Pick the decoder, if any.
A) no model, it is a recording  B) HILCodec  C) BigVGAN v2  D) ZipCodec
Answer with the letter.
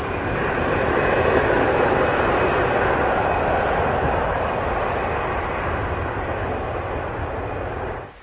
A